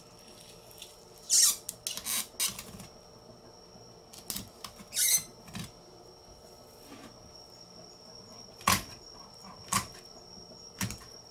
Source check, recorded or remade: recorded